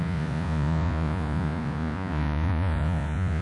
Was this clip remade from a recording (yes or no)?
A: yes